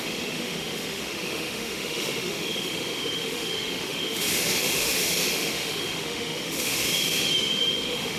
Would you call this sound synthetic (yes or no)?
yes